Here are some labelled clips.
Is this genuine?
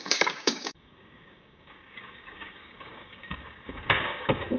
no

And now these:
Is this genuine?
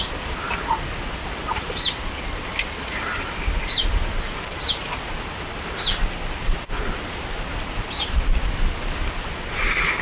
yes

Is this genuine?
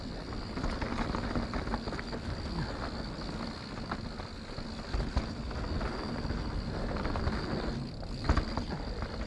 yes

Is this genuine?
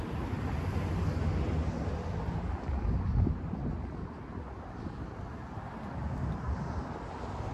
yes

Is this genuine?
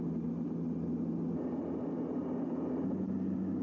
yes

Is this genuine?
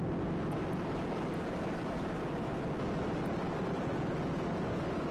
yes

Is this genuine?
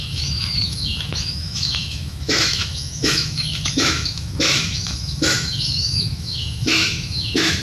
no